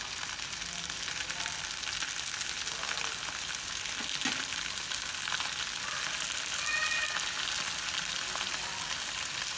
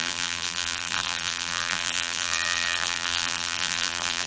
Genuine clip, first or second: first